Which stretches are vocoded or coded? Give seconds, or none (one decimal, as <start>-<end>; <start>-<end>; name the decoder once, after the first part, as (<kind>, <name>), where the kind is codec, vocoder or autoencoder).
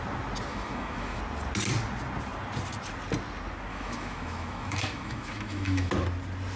0.5-1.2 (autoencoder, DAC-VAE); 3.7-5.9